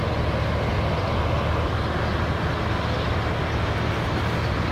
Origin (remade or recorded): recorded